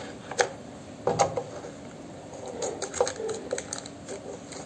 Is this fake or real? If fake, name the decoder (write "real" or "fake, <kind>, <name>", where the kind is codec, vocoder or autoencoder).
real